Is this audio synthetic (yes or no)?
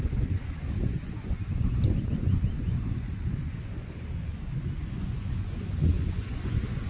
yes